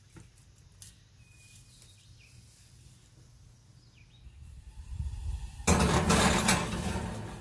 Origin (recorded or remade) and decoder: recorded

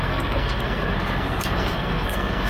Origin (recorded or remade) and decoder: remade, codec, SNAC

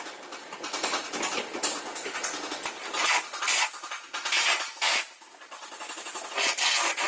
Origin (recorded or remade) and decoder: recorded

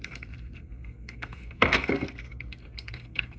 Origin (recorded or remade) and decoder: remade, codec, SNAC